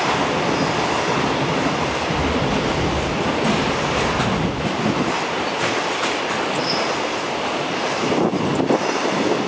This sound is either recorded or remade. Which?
recorded